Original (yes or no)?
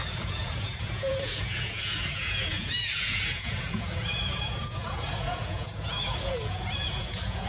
no